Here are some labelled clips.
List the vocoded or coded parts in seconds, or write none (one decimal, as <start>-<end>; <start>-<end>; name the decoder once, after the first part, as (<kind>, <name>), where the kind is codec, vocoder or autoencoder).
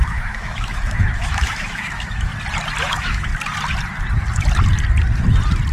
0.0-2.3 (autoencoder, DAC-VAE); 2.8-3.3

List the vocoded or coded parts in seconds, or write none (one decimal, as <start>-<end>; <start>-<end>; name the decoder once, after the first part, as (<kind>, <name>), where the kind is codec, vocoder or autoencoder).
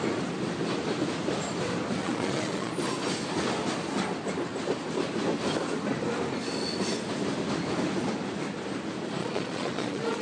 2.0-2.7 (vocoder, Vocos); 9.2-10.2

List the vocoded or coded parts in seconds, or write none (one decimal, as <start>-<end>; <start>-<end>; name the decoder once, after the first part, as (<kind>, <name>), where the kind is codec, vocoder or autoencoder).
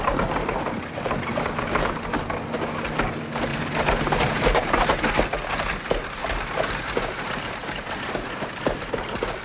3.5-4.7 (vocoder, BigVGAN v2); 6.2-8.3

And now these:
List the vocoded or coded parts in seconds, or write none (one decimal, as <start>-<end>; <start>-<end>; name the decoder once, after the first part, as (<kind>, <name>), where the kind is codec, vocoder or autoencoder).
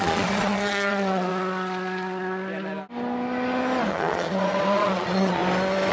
0.0-1.3 (vocoder, Vocos); 3.9-5.4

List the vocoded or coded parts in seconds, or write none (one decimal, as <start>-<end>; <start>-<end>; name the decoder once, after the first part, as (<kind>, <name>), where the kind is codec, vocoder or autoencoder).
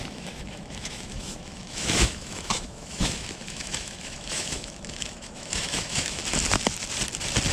0.0-6.2 (autoencoder, DAC-VAE)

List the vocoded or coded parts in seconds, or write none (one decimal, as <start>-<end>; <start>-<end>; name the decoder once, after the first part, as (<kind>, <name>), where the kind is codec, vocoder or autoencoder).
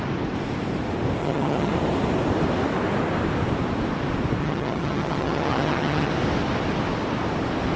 1.2-1.7 (vocoder, HiFi-GAN); 4.4-6.1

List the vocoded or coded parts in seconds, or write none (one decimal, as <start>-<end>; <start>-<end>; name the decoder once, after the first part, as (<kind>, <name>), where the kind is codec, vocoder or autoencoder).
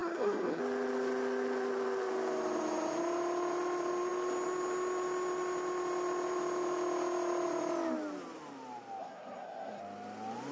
0.0-0.6 (codec, SNAC); 9.0-9.8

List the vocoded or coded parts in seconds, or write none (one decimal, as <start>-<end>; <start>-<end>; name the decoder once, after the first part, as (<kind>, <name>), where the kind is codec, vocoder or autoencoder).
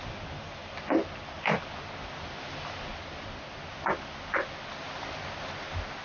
none